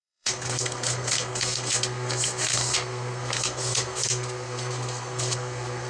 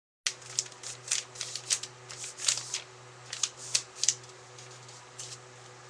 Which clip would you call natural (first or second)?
second